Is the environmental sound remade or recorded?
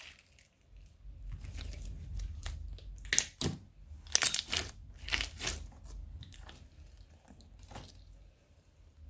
recorded